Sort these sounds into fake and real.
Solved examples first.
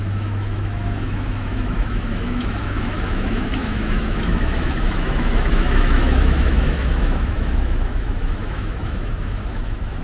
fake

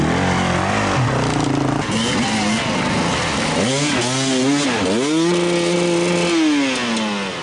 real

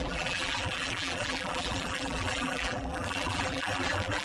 fake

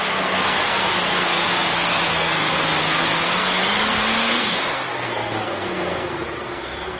fake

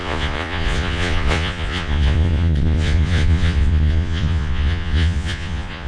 fake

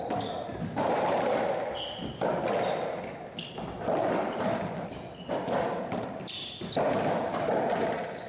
real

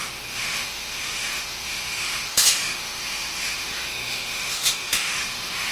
fake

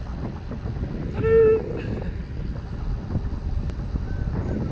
real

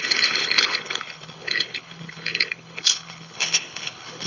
fake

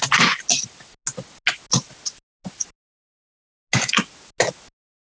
real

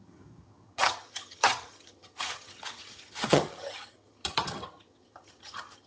fake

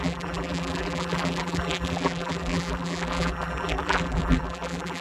fake